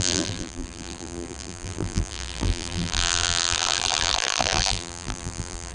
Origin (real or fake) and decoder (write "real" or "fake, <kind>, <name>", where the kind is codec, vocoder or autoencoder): fake, vocoder, BigVGAN v2